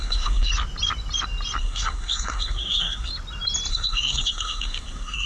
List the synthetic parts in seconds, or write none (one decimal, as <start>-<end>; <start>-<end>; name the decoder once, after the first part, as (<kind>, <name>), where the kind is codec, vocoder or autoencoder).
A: 0.0-0.5 (codec, SNAC); 1.6-3.1; 3.7-5.3

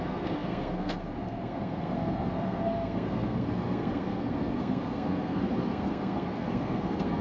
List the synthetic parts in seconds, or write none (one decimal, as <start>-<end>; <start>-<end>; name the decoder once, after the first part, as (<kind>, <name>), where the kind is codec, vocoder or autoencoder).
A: 0.0-7.2 (codec, SNAC)

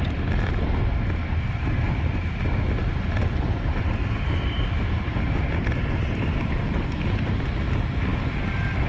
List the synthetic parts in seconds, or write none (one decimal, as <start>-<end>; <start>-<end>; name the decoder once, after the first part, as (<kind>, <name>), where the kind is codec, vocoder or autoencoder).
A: none

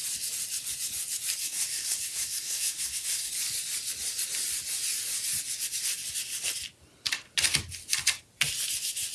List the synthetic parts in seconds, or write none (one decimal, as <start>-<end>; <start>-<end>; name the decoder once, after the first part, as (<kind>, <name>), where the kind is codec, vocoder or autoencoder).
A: 1.4-3.3 (codec, SNAC)

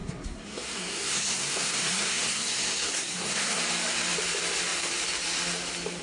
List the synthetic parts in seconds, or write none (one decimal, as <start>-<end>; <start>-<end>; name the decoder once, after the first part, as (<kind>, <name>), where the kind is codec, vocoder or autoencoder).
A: 0.0-3.6 (codec, SNAC)

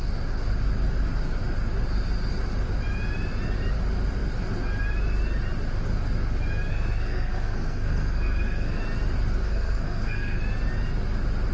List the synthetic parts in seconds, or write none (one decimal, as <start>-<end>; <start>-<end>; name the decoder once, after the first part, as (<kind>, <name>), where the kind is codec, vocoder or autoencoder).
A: 6.7-8.8 (codec, SNAC); 9.4-10.4

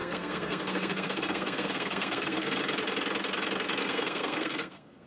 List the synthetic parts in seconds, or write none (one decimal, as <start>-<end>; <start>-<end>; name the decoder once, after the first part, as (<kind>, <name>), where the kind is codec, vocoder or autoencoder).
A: 0.0-2.6 (codec, SNAC); 3.8-5.1

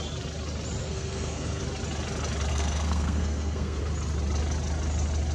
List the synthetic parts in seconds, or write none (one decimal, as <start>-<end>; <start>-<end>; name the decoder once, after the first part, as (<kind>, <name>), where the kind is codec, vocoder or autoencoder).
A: 0.8-1.6 (codec, SNAC); 2.5-3.8